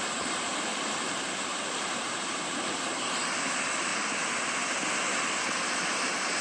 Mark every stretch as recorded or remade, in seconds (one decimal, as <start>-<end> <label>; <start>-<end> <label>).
0.0-3.9 remade; 3.9-5.2 recorded; 5.2-6.4 remade